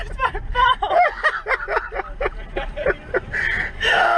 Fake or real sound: real